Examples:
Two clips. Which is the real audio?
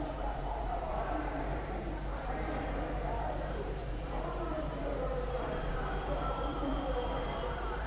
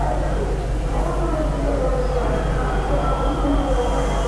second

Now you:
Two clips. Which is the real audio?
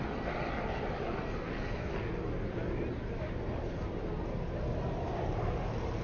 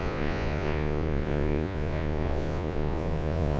first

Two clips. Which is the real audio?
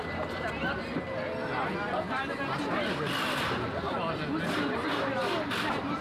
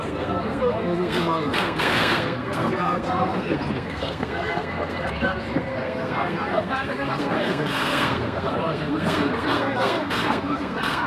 first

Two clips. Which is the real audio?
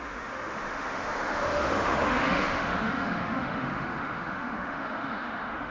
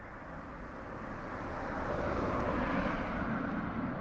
second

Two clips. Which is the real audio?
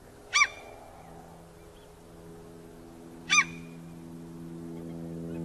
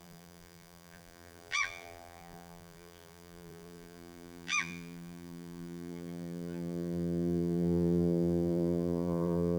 first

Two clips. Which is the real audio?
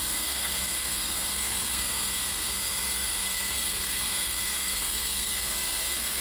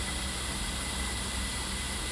second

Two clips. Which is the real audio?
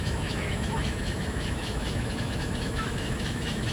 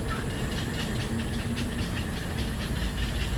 second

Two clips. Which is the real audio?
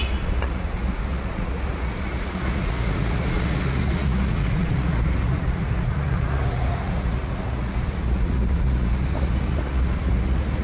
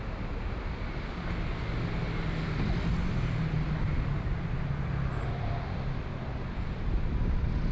second